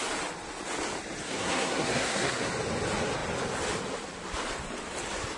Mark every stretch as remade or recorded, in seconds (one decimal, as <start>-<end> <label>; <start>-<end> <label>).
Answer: 0.0-1.2 recorded; 1.2-2.5 remade; 2.5-5.4 recorded